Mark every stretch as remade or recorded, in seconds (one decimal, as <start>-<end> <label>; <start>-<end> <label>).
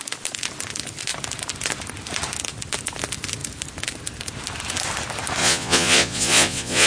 0.0-5.4 recorded; 5.4-6.9 remade